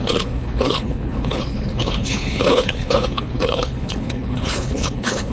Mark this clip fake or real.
fake